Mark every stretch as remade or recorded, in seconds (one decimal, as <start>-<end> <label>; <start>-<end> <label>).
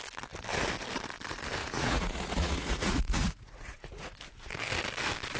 0.0-1.6 recorded; 1.6-4.2 remade; 4.2-5.4 recorded